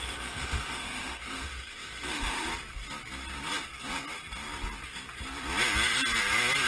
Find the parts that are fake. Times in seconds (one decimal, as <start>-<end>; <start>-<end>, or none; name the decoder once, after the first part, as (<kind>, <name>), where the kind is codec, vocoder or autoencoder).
0.0-2.5 (autoencoder, DAC-VAE)

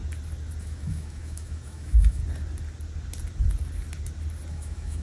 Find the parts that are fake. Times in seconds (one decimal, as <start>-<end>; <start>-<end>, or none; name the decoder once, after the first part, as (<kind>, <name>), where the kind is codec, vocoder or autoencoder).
0.6-2.2 (autoencoder, DAC-VAE); 4.5-5.0